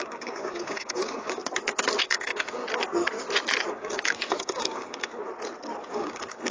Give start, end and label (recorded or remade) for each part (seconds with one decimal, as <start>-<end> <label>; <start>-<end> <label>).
0.0-1.4 remade; 1.4-2.0 recorded; 2.0-2.6 remade; 2.6-3.7 recorded; 3.7-5.2 remade; 5.2-5.8 recorded; 5.8-6.5 remade